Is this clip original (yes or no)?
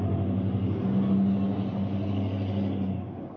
yes